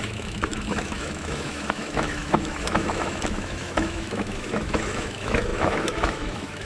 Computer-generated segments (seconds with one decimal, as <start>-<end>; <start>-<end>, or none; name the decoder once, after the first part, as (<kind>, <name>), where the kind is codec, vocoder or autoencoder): 0.0-6.6 (autoencoder, DAC-VAE)